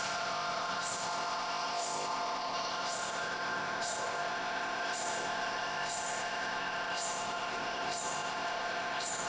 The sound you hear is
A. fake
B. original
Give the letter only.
A